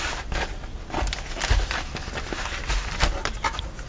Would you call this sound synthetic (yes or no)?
no